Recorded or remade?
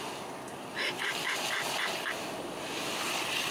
recorded